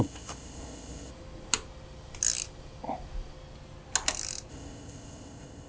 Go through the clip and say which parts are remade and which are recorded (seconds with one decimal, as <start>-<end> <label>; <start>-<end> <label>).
0.0-1.1 remade; 1.1-4.5 recorded; 4.5-5.7 remade